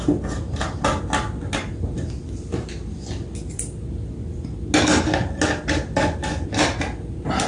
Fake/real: real